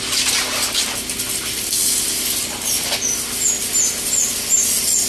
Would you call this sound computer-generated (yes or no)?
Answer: no